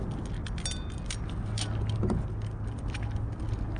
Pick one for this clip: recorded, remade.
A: recorded